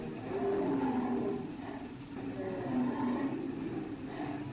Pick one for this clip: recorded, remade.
recorded